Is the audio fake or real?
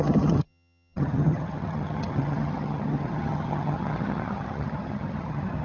fake